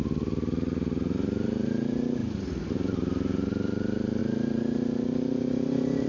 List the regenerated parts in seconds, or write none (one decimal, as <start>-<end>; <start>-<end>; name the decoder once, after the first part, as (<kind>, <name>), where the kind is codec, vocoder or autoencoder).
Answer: 4.2-6.1 (vocoder, BigVGAN v2)